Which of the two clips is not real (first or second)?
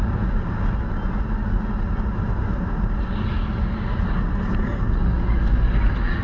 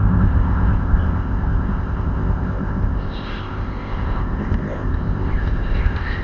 second